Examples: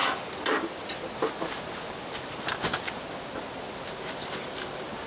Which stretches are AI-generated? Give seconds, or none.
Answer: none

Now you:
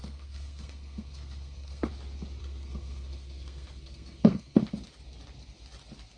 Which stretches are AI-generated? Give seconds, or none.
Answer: 0.0-1.9 (codec, SNAC); 2.4-4.6

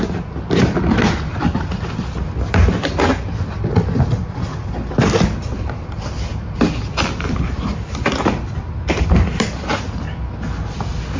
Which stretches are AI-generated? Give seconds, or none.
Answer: none

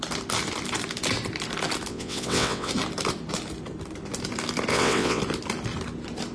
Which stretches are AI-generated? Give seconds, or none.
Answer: 1.9-2.7 (vocoder, WaveNeXt); 4.7-5.2

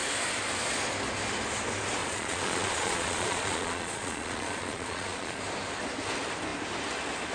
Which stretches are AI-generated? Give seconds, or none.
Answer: 2.0-5.4 (vocoder, Vocos)